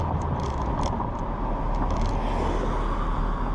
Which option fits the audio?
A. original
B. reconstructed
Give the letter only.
A